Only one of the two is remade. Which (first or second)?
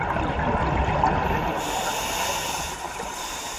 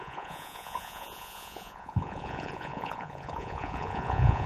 second